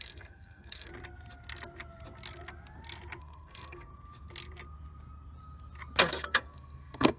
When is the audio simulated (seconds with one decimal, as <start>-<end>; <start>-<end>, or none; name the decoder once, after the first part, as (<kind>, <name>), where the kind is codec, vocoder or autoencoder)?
0.0-0.9 (codec, SNAC); 3.2-3.9; 6.1-7.2